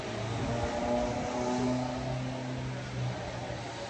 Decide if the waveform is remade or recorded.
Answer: recorded